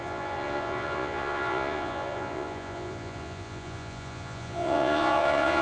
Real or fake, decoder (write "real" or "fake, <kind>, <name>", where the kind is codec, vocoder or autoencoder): fake, vocoder, Vocos